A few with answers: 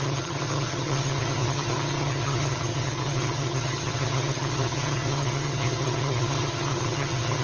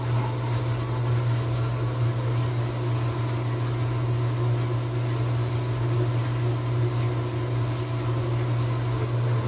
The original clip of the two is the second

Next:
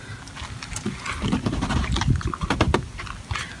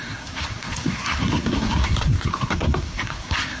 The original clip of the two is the first